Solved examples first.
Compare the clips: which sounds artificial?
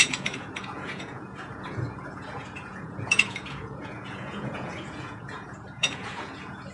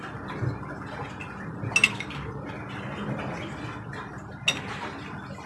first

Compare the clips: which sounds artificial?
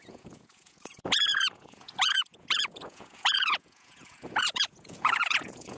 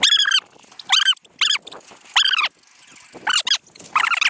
first